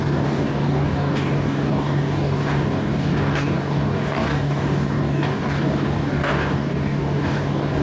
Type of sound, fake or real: fake